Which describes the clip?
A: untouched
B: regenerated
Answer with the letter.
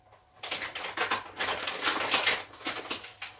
A